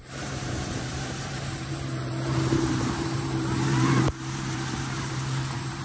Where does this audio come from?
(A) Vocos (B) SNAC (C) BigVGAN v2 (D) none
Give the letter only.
C